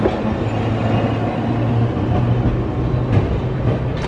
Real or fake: real